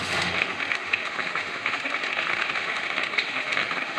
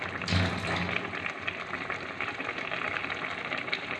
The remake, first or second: first